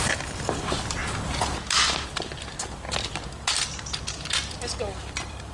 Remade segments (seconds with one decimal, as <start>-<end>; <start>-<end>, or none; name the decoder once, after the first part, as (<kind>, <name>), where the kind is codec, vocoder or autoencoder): 0.0-1.0 (vocoder, BigVGAN v2); 4.3-5.5